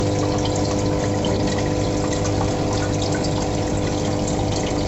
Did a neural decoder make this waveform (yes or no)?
no